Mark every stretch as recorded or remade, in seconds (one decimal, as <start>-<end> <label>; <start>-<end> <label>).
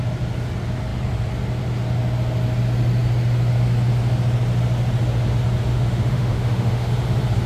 0.0-5.7 recorded; 5.7-6.9 remade; 6.9-7.5 recorded